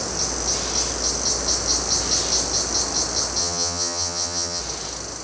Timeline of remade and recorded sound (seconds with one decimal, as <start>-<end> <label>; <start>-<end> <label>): 0.0-3.4 recorded; 3.4-4.6 remade; 4.6-5.2 recorded